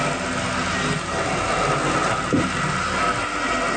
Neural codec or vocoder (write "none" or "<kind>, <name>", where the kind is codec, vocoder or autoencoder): none